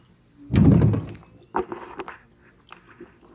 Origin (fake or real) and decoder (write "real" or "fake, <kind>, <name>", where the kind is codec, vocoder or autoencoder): real